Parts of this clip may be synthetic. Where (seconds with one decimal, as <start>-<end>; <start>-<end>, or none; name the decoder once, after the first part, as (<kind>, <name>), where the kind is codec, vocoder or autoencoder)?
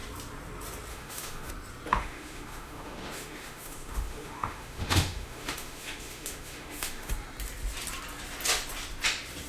0.9-1.5 (autoencoder, DAC-VAE); 1.9-7.1